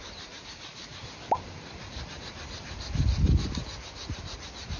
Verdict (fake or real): real